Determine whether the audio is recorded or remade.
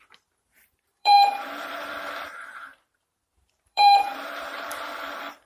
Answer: remade